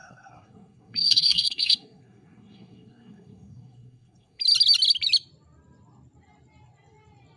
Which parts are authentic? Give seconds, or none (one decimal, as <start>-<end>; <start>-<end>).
4.4-7.4